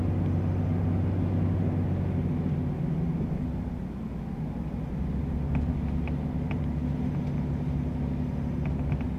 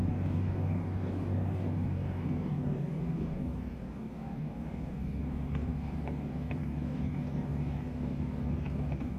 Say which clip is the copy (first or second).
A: second